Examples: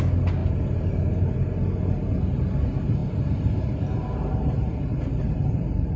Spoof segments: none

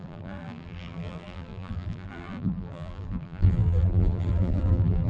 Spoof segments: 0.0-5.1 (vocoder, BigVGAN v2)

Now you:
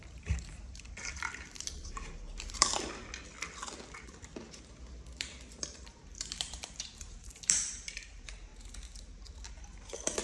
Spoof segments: 0.0-2.7 (vocoder, BigVGAN v2); 5.2-8.5; 9.5-10.2